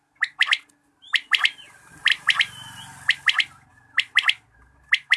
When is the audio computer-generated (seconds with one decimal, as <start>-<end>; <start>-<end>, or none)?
none